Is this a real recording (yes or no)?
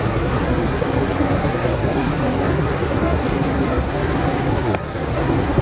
no